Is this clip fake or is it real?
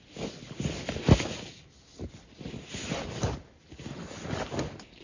real